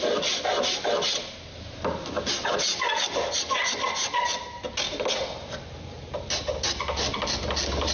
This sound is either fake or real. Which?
real